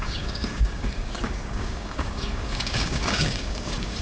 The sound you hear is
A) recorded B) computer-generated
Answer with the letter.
B